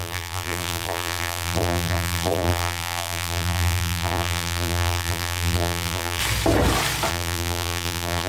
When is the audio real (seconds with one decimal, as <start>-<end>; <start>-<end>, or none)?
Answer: 6.2-7.1